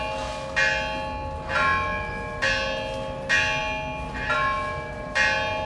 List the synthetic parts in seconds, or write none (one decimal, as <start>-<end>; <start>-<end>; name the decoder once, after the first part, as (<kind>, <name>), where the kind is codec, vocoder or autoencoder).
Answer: none